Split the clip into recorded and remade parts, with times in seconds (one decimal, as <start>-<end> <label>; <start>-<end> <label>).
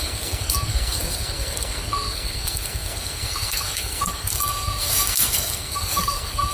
0.0-6.5 remade